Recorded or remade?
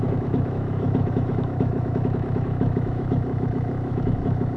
remade